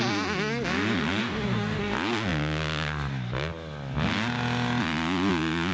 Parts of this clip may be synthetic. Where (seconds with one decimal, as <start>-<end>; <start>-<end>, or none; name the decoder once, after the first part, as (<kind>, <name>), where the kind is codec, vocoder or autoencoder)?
1.2-1.8 (codec, DAC)